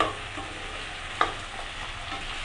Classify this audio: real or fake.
real